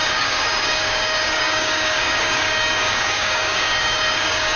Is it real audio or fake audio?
fake